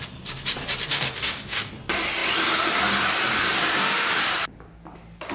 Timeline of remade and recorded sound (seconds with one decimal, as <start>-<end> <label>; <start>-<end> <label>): 0.0-0.9 recorded; 0.9-1.7 remade; 1.7-5.3 recorded